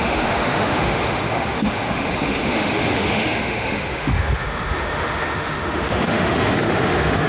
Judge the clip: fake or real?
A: fake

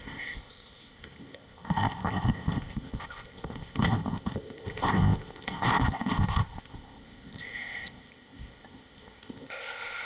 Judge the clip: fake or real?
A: fake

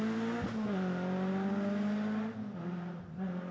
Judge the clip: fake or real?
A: real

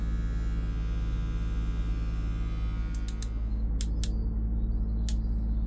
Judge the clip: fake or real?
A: real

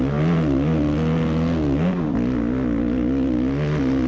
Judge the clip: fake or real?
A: real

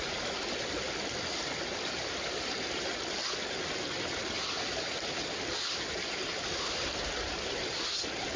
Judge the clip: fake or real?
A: real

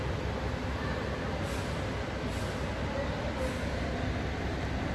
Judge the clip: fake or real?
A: real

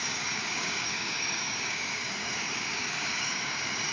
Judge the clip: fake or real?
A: fake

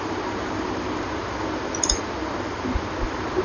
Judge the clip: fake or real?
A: real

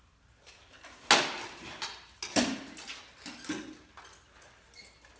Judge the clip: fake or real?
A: real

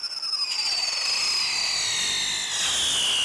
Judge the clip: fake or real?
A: real